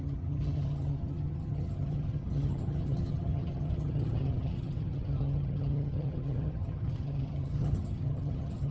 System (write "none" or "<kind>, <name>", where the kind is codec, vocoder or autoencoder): vocoder, HiFi-GAN